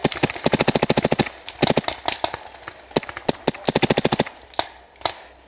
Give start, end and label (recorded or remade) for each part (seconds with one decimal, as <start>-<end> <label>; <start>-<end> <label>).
0.0-5.5 recorded